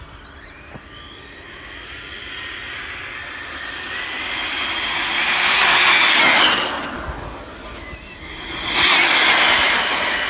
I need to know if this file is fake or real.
real